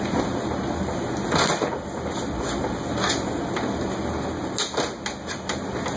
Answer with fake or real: real